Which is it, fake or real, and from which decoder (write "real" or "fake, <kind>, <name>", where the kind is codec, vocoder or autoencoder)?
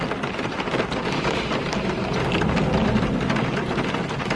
real